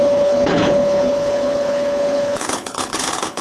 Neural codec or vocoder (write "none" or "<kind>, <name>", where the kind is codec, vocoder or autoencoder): codec, HILCodec